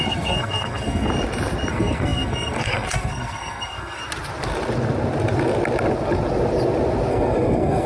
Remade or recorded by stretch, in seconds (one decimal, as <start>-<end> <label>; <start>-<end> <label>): 0.0-1.1 remade; 1.1-1.7 recorded; 1.7-4.0 remade; 4.0-7.1 recorded; 7.1-7.9 remade